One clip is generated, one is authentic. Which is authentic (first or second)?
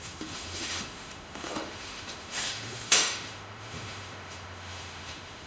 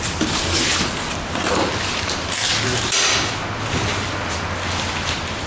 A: second